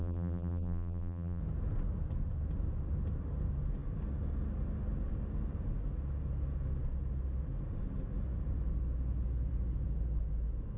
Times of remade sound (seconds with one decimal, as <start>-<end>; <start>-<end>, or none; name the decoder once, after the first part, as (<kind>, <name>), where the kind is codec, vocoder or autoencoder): 0.0-1.4 (vocoder, BigVGAN v2)